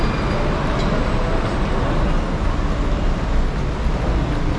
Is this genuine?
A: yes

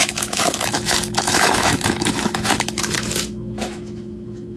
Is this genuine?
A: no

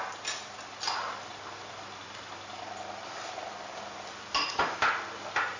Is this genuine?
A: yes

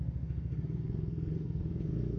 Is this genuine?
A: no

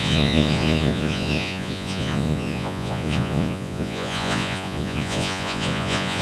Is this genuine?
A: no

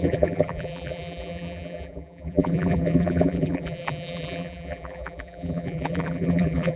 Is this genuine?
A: no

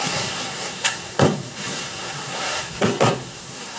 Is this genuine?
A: no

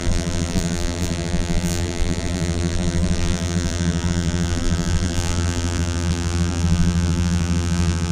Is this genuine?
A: no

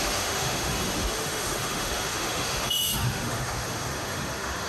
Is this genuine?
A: no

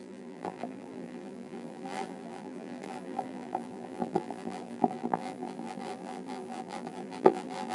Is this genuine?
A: no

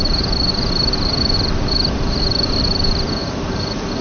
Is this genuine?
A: no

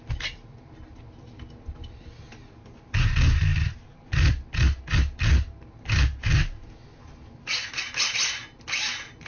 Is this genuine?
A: yes